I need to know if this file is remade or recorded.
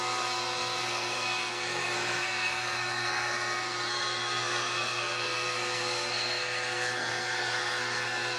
remade